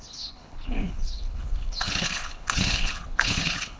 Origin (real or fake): fake